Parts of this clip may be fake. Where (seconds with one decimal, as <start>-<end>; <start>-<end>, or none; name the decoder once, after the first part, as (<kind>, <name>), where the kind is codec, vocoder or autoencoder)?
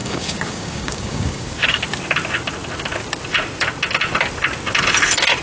0.0-1.8 (codec, DAC)